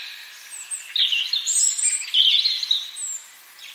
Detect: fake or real real